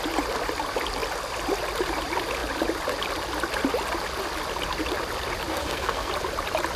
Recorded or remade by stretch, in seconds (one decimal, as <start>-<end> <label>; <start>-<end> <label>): 0.0-5.5 recorded; 5.5-6.1 remade; 6.1-6.8 recorded